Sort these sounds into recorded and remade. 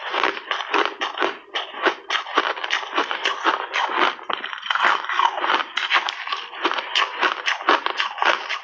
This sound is recorded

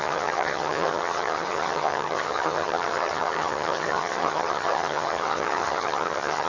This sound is remade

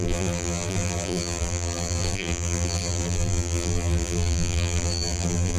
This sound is remade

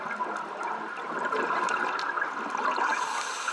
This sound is recorded